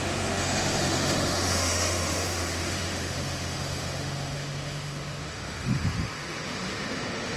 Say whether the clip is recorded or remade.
remade